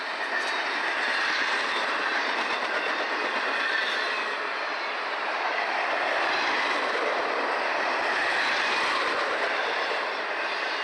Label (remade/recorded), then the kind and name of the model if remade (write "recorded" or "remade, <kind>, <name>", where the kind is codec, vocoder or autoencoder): remade, vocoder, BigVGAN v2